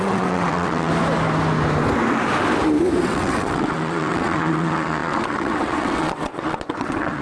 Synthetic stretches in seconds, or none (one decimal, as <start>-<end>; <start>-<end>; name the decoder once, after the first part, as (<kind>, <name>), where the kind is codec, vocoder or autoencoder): 0.0-0.9 (vocoder, WaveNeXt); 3.0-7.2